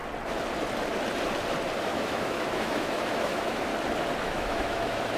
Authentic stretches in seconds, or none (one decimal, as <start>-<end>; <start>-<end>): 0.0-1.8; 3.7-4.2